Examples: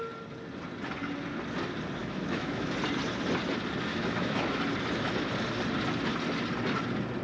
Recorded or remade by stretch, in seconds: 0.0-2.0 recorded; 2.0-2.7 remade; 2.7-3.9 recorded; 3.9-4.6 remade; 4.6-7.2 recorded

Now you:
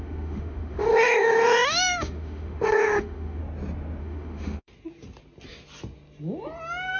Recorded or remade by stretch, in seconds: 0.0-3.4 remade; 3.4-4.0 recorded; 4.0-4.7 remade; 4.7-7.0 recorded